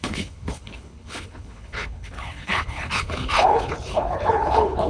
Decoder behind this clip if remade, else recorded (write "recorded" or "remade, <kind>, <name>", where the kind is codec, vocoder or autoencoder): remade, codec, HILCodec